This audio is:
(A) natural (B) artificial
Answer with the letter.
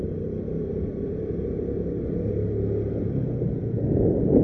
A